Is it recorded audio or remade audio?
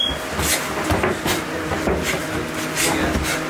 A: recorded